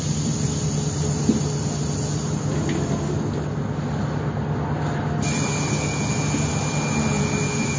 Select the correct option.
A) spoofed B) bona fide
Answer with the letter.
B